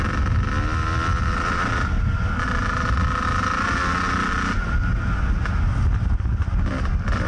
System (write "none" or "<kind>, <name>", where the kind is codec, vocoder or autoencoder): none